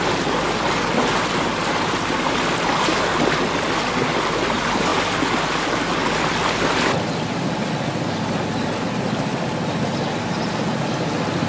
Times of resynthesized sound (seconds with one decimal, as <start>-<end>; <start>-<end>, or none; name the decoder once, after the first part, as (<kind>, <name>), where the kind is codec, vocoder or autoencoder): none